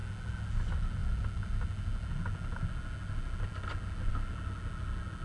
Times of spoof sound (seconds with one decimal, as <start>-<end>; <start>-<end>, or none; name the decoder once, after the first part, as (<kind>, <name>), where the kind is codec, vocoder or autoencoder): none